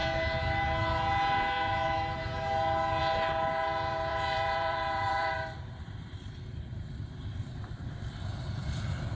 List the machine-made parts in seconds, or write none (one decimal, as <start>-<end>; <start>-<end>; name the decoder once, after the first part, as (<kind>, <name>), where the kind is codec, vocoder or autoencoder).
4.1-9.2 (vocoder, BigVGAN v2)